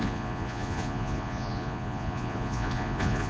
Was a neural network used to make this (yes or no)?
yes